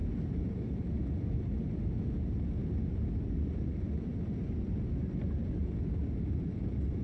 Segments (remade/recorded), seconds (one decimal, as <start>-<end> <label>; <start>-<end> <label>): 0.0-1.8 remade; 1.8-2.6 recorded; 2.6-7.0 remade